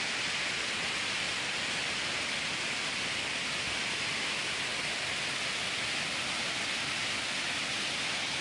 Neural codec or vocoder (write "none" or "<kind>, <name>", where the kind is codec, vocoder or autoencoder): none